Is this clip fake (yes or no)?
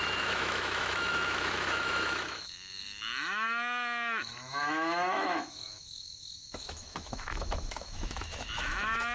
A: yes